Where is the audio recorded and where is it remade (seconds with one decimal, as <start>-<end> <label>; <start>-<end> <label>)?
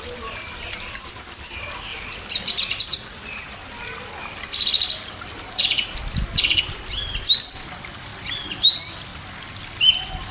0.0-1.9 remade; 1.9-2.5 recorded; 2.5-3.6 remade; 3.6-6.6 recorded; 6.6-8.1 remade; 8.1-8.7 recorded; 8.7-9.1 remade; 9.1-9.9 recorded; 9.9-10.3 remade